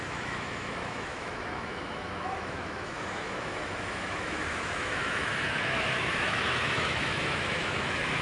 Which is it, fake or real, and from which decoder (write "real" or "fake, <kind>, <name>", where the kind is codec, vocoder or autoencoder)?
fake, autoencoder, DAC-VAE